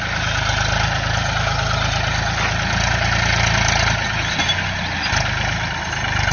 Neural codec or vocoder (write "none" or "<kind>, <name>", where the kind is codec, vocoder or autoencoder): none